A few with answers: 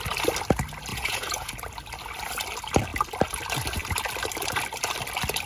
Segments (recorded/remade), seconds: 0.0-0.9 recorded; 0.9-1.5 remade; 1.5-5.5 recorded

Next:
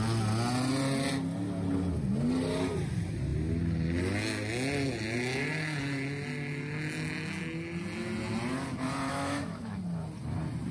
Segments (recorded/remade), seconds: 0.0-9.1 recorded; 9.1-9.8 remade; 9.8-10.7 recorded

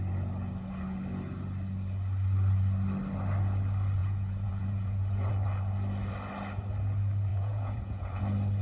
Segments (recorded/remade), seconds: 0.0-4.0 recorded; 4.0-5.3 remade; 5.3-7.3 recorded; 7.3-8.2 remade; 8.2-8.6 recorded

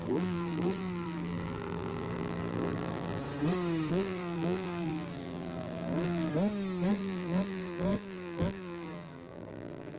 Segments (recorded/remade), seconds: 0.0-3.2 remade; 3.2-3.9 recorded; 3.9-6.3 remade; 6.3-6.9 recorded; 6.9-10.0 remade

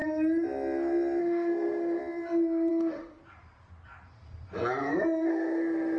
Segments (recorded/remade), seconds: 0.0-1.2 recorded; 1.2-2.0 remade; 2.0-2.7 recorded; 2.7-3.2 remade; 3.2-5.3 recorded; 5.3-6.0 remade

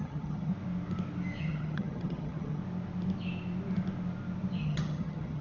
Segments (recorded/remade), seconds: 0.0-0.5 remade; 0.5-1.4 recorded; 1.4-2.6 remade; 2.6-4.6 recorded; 4.6-5.4 remade

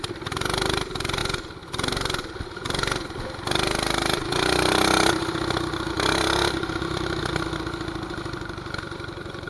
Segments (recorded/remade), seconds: 0.0-1.2 remade; 1.2-5.9 recorded; 5.9-7.3 remade; 7.3-8.1 recorded; 8.1-9.5 remade

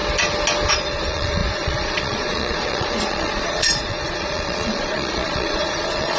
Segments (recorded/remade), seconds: 0.0-0.7 recorded; 0.7-6.2 remade